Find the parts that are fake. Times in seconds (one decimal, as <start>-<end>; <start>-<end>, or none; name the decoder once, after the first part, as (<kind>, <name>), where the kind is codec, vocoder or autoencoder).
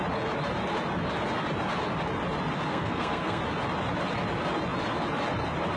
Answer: 2.7-3.4 (codec, SNAC)